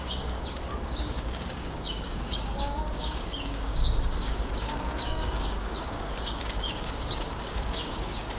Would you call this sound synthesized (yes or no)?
yes